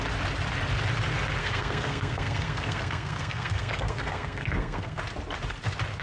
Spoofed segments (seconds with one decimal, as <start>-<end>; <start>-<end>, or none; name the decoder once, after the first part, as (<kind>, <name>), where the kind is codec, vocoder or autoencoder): 1.4-5.0 (codec, SNAC)